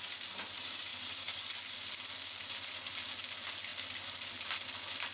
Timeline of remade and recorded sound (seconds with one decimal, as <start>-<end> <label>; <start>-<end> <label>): 0.0-5.1 recorded